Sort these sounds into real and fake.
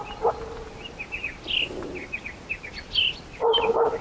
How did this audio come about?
real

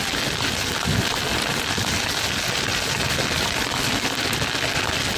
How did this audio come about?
real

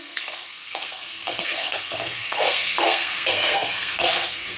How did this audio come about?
fake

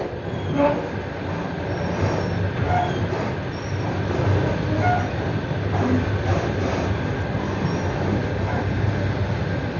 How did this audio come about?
fake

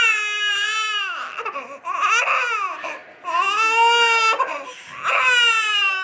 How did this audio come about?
real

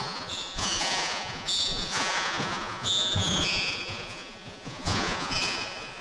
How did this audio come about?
fake